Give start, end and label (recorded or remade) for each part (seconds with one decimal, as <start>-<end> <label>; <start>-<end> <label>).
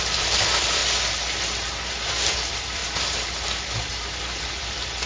0.0-0.8 remade; 0.8-2.3 recorded; 2.3-2.8 remade; 2.8-3.9 recorded; 3.9-5.1 remade